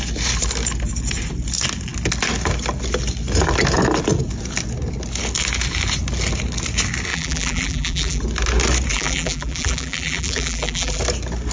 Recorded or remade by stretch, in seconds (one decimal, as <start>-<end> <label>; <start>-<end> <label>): 0.0-7.1 recorded; 7.1-8.2 remade; 8.2-8.9 recorded; 8.9-11.0 remade; 11.0-11.5 recorded